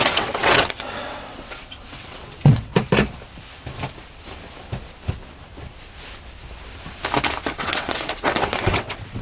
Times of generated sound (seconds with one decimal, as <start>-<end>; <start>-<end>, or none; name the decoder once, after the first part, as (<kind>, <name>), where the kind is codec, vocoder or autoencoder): 0.0-2.7 (vocoder, WaveNeXt); 7.6-9.2